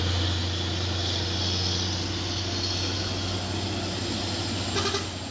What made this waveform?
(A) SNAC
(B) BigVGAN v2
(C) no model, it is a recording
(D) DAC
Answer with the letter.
C